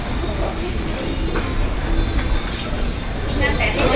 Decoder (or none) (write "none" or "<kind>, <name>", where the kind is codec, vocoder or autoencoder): none